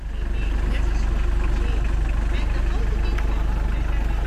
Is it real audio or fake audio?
real